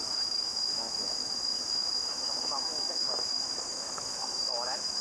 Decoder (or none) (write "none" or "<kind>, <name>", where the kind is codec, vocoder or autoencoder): autoencoder, DAC-VAE